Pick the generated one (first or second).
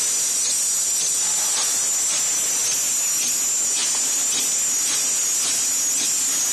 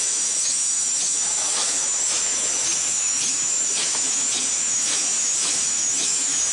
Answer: second